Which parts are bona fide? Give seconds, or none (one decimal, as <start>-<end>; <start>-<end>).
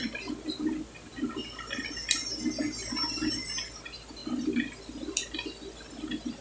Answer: 0.0-6.4